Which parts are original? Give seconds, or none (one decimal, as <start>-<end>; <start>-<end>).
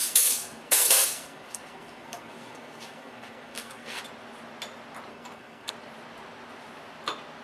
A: 4.0-5.1; 5.7-7.4